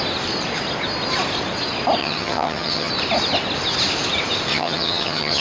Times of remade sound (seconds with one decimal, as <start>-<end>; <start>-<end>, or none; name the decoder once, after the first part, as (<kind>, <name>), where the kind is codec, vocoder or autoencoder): 2.0-2.9 (vocoder, HiFi-GAN); 4.5-5.4